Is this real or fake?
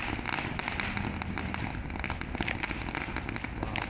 real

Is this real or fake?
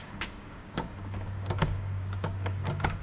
fake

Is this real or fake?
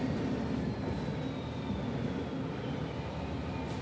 real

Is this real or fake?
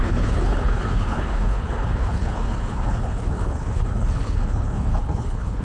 fake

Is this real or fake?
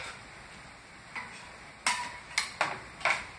real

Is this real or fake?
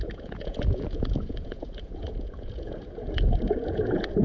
fake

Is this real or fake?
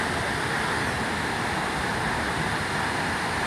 real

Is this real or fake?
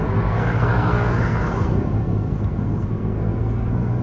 fake